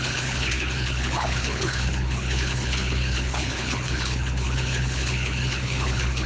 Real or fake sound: fake